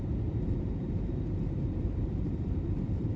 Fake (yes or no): yes